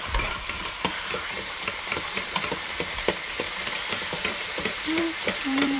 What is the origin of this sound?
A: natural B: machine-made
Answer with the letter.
B